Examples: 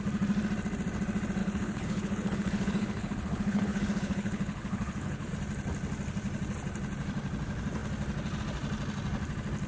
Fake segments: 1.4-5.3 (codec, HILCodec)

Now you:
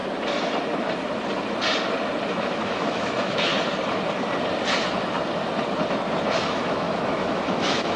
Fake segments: 2.3-3.5 (autoencoder, DAC-VAE); 6.3-8.0

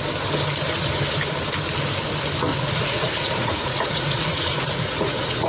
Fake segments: 2.5-5.5 (vocoder, Vocos)